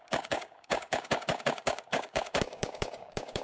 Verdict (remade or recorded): remade